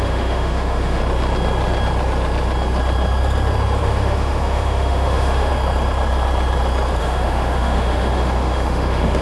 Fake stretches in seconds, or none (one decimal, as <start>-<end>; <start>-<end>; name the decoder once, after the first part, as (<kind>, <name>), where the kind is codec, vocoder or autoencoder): 0.0-1.0 (autoencoder, DAC-VAE); 3.8-5.5; 7.0-9.2